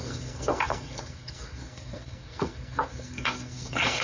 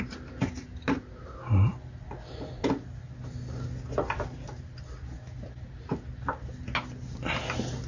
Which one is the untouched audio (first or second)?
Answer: second